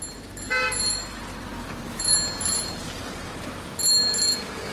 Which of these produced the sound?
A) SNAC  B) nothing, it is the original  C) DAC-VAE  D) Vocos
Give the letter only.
B